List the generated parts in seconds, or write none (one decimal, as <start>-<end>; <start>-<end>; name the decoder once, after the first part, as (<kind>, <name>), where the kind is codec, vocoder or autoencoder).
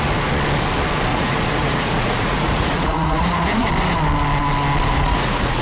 1.1-3.7 (vocoder, Vocos); 4.9-5.6